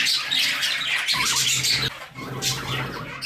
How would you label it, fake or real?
real